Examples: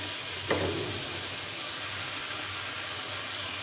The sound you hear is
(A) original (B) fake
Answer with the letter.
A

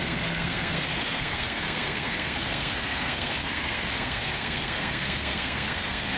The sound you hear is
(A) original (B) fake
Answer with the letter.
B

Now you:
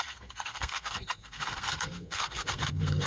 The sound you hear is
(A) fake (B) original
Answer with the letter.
A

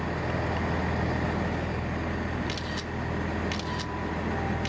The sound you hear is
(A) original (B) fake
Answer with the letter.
A